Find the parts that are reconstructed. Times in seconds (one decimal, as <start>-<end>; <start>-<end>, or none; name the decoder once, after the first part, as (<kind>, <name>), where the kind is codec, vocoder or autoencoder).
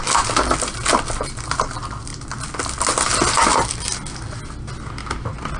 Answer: none